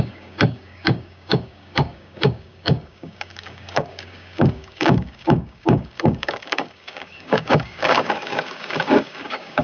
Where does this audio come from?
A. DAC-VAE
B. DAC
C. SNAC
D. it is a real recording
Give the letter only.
B